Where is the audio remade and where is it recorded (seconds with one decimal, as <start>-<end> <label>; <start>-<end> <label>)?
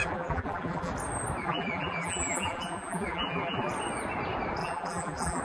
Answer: 0.0-0.9 remade; 0.9-1.4 recorded; 1.4-3.7 remade; 3.7-4.6 recorded; 4.6-5.4 remade